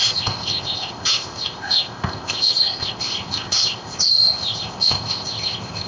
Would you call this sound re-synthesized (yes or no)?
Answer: yes